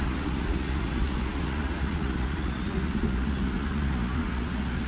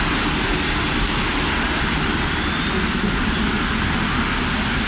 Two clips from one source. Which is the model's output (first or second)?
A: first